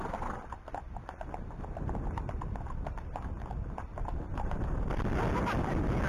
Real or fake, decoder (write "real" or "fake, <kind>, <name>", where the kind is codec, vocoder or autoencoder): fake, vocoder, BigVGAN v2